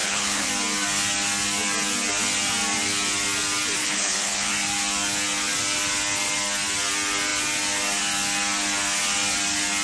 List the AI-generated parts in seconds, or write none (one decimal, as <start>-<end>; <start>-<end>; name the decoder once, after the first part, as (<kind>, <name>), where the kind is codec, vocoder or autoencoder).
0.0-0.5 (codec, HILCodec); 3.8-4.5